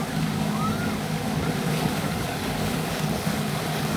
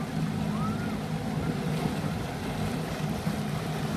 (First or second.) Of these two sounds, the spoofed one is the first